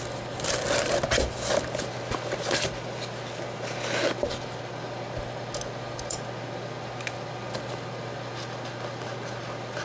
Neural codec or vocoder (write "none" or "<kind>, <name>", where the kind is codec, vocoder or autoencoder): none